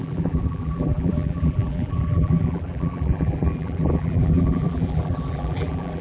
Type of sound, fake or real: fake